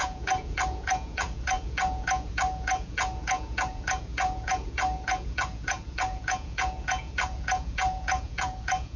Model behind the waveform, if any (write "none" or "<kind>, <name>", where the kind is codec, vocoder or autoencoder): vocoder, Vocos